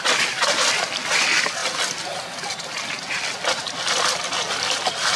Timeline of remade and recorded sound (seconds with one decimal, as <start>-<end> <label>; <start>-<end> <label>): 0.0-5.2 recorded